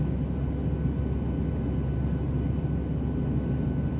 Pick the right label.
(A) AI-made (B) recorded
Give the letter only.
B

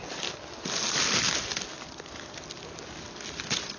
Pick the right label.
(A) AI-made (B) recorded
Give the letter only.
B